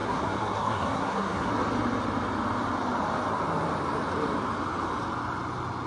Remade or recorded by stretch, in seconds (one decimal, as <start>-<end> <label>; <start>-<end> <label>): 0.0-1.5 remade; 1.5-5.9 recorded